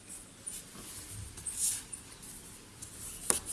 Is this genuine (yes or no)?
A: yes